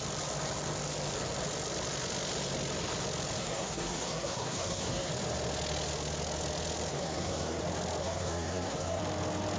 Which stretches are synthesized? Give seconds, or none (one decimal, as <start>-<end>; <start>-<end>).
3.4-5.1; 6.9-7.6; 8.0-9.0